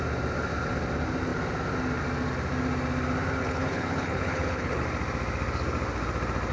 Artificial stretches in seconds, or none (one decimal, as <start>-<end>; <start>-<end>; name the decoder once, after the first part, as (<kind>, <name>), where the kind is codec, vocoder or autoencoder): 3.4-4.8 (codec, HILCodec)